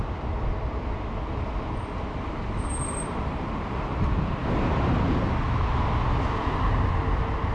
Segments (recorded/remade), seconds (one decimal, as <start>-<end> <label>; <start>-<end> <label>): 0.0-2.7 recorded; 2.7-3.5 remade; 3.5-7.5 recorded